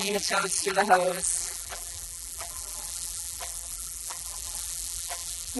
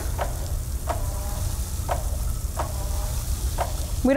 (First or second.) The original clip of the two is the second